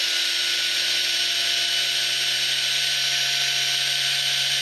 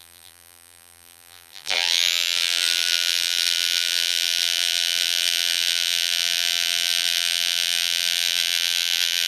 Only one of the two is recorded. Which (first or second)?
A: first